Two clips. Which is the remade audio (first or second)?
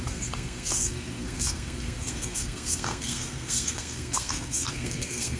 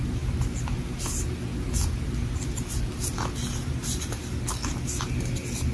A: first